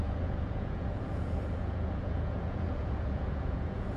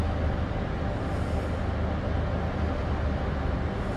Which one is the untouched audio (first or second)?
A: second